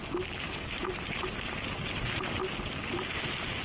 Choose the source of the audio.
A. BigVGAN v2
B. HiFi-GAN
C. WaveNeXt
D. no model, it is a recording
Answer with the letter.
D